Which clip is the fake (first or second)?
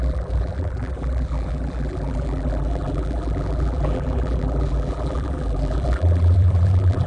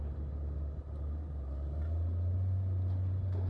first